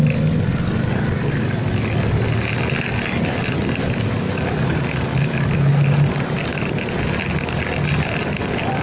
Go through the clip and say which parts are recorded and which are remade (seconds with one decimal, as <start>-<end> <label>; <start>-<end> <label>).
0.0-8.8 recorded